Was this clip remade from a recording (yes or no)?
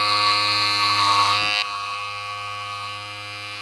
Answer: no